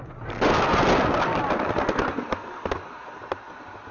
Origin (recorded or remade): recorded